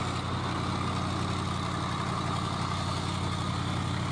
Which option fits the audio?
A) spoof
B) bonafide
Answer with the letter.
B